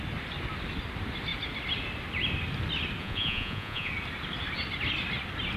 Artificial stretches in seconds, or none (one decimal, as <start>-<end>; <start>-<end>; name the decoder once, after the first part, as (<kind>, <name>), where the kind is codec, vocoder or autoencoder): 3.0-3.9 (vocoder, Vocos)